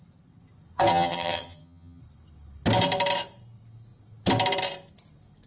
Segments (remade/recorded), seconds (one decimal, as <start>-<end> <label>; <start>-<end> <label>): 0.0-0.9 recorded; 0.9-2.0 remade; 2.0-5.5 recorded